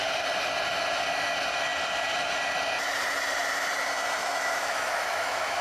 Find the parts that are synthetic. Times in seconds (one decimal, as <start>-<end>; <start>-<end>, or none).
4.2-5.6